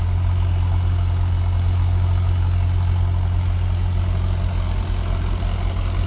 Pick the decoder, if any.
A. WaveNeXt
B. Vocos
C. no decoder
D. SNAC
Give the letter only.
C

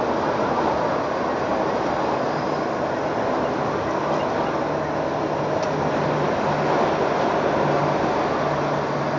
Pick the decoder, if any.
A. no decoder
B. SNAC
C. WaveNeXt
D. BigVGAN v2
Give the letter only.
A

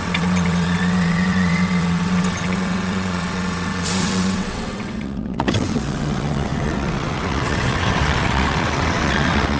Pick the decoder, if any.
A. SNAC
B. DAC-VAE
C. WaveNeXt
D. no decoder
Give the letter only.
C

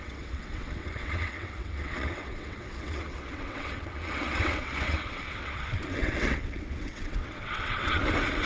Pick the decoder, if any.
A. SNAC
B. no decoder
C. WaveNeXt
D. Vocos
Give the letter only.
C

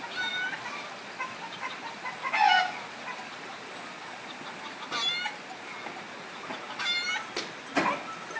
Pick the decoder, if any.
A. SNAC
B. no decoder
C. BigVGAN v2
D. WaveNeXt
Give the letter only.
B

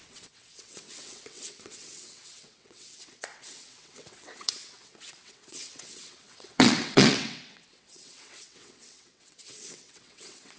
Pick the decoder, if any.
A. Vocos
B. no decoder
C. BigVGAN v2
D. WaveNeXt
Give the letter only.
D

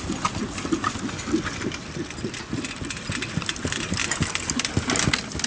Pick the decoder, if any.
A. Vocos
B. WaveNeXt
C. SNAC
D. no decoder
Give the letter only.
D